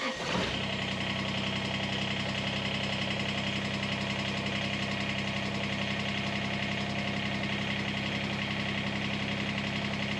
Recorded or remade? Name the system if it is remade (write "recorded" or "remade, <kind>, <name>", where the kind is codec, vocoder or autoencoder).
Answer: recorded